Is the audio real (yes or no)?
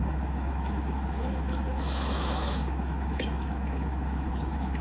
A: no